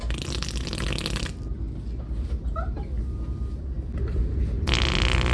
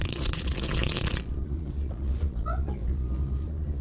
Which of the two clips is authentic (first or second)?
first